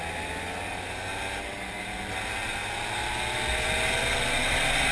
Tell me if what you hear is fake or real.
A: real